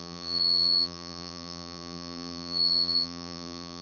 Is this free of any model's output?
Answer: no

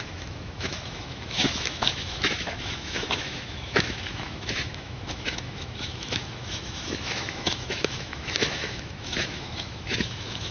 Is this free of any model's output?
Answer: no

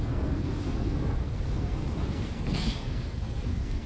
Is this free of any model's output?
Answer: no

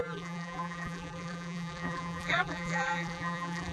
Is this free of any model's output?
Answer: no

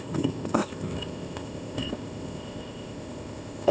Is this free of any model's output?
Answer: no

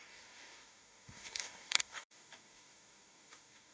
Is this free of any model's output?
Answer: no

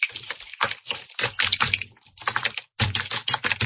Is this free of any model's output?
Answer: yes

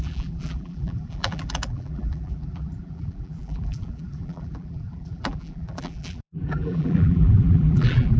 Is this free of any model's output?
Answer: no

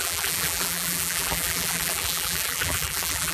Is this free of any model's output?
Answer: no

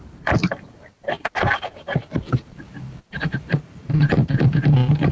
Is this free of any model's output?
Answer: no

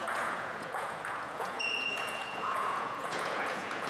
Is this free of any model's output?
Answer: no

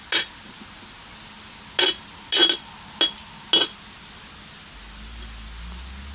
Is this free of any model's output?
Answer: yes